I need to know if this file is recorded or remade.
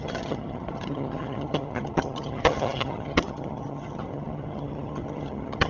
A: remade